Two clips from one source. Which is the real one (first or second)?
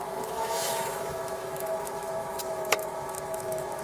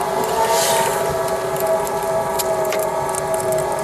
second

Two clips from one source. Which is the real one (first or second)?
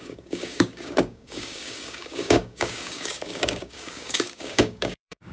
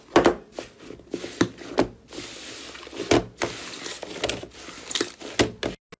second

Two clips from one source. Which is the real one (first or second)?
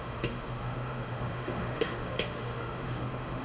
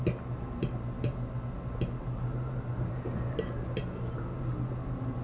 second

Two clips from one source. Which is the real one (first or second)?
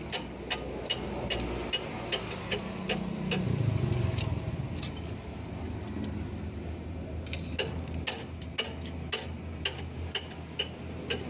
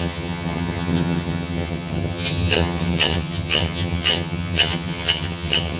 first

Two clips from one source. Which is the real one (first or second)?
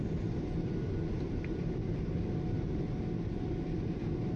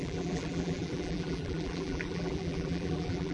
first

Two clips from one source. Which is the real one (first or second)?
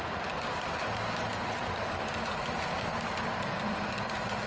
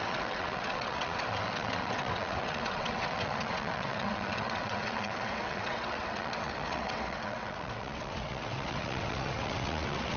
first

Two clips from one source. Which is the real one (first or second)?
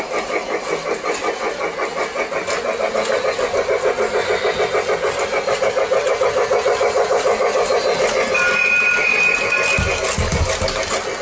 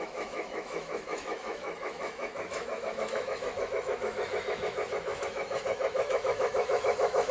first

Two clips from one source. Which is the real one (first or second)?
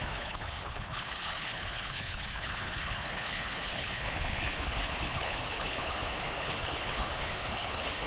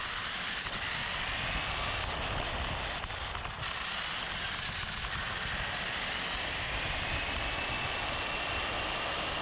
second